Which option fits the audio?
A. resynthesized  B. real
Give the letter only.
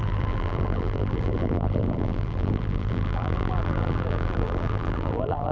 A